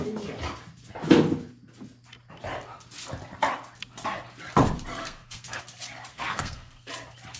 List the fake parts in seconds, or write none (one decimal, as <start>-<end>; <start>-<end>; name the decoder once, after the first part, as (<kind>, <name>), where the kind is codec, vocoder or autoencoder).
5.0-5.6 (codec, SNAC); 6.1-6.9